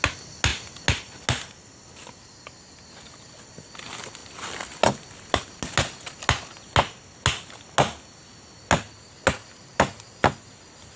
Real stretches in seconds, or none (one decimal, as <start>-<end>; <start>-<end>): 0.0-11.0